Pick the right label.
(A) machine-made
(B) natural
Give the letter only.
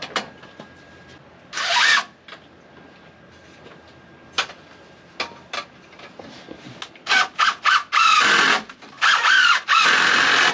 B